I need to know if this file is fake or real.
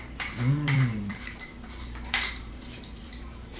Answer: fake